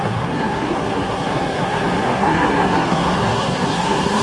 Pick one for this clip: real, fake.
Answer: fake